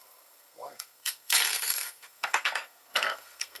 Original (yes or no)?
no